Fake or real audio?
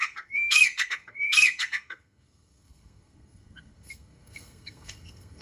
fake